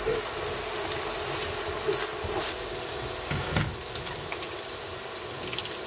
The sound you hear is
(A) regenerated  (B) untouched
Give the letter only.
B